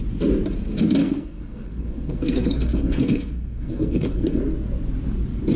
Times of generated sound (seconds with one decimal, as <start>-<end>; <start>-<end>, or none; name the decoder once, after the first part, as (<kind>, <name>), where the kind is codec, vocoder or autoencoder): 1.0-4.4 (codec, SNAC)